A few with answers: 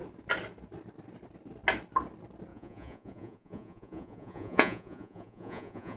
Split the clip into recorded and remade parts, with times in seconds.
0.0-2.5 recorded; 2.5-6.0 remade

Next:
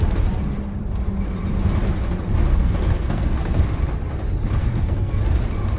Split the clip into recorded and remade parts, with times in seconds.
0.0-2.5 recorded; 2.5-3.6 remade; 3.6-4.6 recorded; 4.6-5.2 remade; 5.2-5.8 recorded